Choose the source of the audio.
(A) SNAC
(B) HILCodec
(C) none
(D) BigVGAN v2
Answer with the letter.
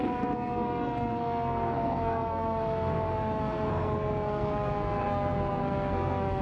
A